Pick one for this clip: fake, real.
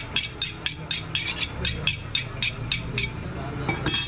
real